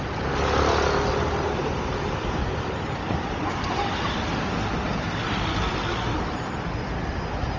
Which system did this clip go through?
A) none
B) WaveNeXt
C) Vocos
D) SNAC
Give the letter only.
A